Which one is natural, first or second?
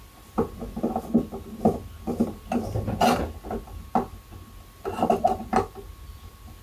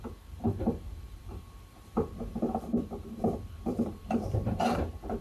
first